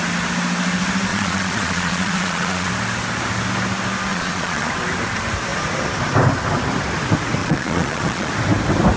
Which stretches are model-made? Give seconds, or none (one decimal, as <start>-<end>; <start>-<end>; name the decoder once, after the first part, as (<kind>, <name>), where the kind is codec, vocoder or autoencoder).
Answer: 1.1-2.7 (vocoder, Vocos); 4.1-4.7; 7.4-8.3